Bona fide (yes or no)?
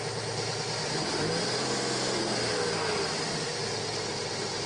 yes